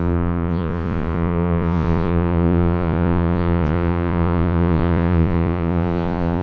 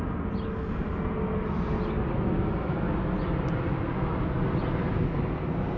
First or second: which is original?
second